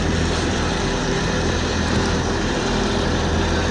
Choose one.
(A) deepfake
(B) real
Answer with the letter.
A